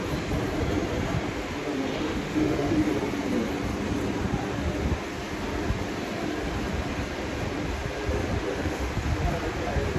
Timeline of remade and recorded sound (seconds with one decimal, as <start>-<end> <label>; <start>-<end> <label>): 0.0-1.9 recorded; 1.9-2.7 remade; 2.7-8.4 recorded; 8.4-8.9 remade; 8.9-10.0 recorded